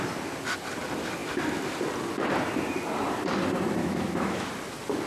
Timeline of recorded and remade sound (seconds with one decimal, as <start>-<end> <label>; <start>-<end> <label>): 0.0-3.8 recorded; 3.8-4.5 remade; 4.5-5.1 recorded